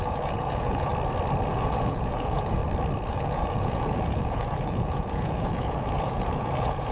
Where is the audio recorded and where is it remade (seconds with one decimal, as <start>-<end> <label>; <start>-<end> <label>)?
0.0-0.9 remade; 0.9-1.5 recorded; 1.5-2.6 remade; 2.6-3.1 recorded; 3.1-6.9 remade